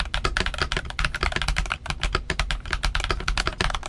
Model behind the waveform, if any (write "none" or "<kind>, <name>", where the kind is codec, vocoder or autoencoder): none